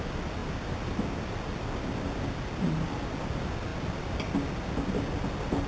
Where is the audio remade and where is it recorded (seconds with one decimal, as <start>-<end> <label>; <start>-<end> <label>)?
0.0-5.7 recorded